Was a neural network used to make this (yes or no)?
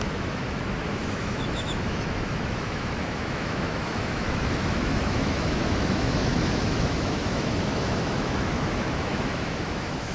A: yes